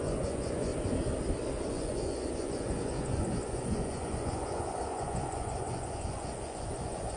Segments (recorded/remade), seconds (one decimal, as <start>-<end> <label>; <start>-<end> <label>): 0.0-0.7 remade; 0.7-1.7 recorded; 1.7-7.2 remade